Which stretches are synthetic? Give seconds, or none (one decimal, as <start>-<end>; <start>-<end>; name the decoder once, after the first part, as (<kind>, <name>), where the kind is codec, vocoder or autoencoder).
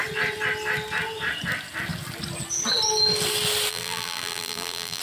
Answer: 3.7-5.0 (vocoder, BigVGAN v2)